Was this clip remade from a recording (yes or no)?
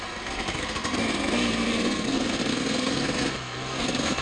yes